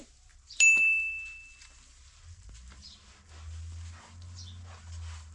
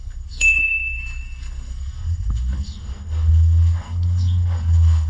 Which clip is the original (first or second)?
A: first